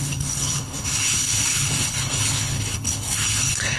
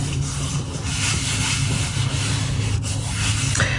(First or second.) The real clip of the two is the second